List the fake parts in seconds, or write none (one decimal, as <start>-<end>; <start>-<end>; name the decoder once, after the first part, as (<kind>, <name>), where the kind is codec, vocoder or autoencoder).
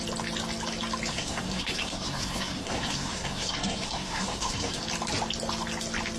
1.1-4.8 (codec, SNAC)